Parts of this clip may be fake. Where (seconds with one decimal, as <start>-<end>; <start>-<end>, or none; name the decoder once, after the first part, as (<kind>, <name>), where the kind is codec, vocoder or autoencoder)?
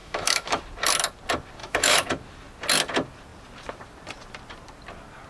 0.0-0.6 (autoencoder, DAC-VAE); 1.6-2.1